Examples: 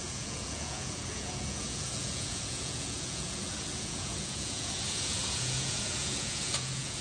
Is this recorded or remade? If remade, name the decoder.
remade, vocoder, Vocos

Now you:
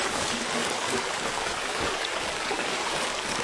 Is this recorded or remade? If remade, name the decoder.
remade, codec, DAC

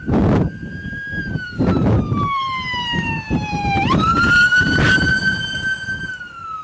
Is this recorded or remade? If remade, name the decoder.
remade, vocoder, BigVGAN v2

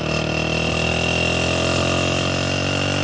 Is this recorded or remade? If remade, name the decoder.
recorded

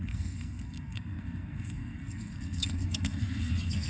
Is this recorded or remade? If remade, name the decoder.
remade, codec, SNAC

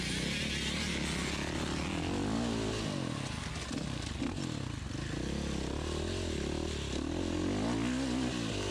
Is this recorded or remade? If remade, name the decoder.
recorded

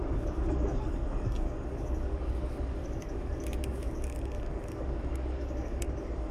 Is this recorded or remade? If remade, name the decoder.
remade, codec, DAC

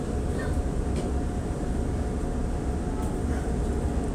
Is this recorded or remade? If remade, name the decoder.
recorded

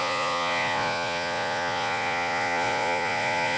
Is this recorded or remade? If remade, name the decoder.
remade, vocoder, Vocos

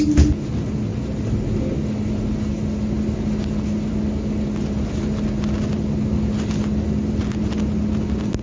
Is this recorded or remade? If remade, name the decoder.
recorded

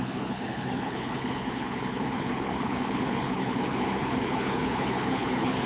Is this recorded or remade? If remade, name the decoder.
remade, codec, HILCodec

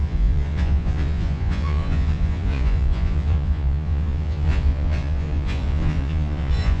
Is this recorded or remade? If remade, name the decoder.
remade, vocoder, Vocos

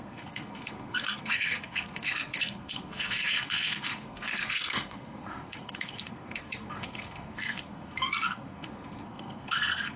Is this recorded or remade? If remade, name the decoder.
remade, codec, SNAC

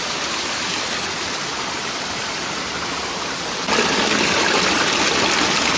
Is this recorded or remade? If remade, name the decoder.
recorded